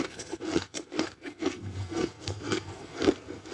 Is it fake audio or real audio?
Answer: fake